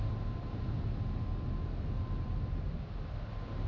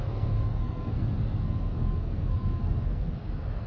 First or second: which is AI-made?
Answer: second